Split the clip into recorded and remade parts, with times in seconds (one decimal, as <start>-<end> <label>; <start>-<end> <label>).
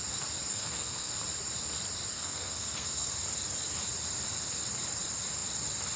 0.0-0.5 recorded; 0.5-1.1 remade; 1.1-2.1 recorded; 2.1-3.1 remade; 3.1-6.0 recorded